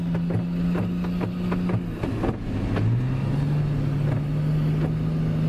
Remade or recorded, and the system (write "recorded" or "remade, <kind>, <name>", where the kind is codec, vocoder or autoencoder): recorded